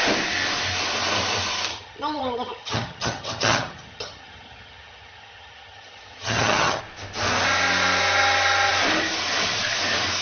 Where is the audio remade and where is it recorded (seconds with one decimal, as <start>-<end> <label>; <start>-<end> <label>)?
0.0-1.7 recorded; 1.7-6.8 remade; 6.8-10.2 recorded